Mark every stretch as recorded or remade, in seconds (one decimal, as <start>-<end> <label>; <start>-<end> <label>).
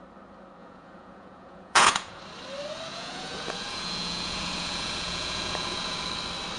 0.0-0.6 recorded; 0.6-2.2 remade; 2.2-2.9 recorded; 2.9-6.1 remade; 6.1-6.6 recorded